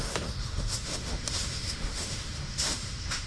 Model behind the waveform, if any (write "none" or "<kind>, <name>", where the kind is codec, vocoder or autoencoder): autoencoder, DAC-VAE